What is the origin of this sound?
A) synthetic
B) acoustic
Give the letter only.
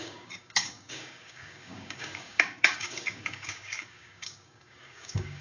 A